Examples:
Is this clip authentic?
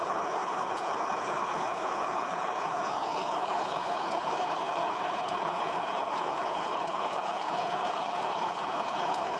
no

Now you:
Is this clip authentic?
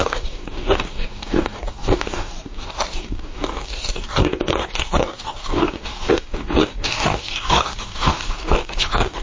no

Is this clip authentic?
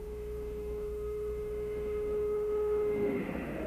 no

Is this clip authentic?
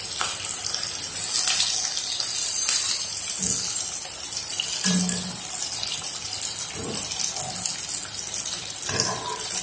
yes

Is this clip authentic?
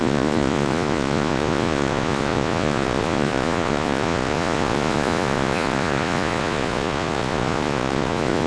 no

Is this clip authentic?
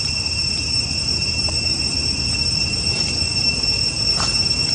yes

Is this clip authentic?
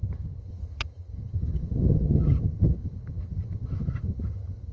no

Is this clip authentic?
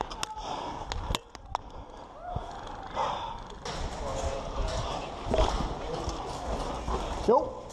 yes